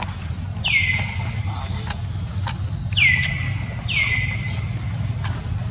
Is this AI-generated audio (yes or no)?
no